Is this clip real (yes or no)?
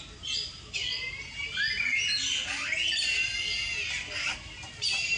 yes